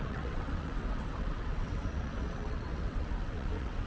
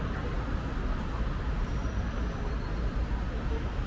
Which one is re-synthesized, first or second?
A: first